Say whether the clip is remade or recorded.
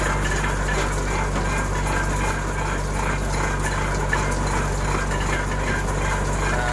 recorded